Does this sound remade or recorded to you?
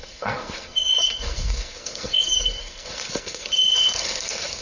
remade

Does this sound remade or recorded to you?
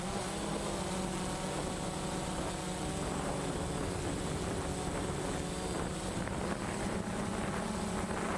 recorded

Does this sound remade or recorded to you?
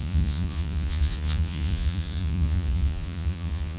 remade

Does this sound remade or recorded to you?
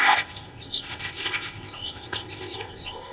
remade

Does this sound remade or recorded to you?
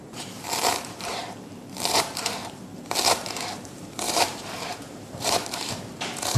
remade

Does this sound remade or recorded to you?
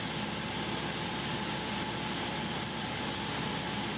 recorded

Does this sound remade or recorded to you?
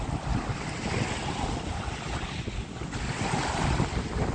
recorded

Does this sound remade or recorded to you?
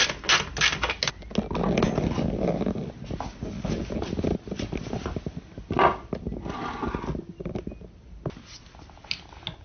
recorded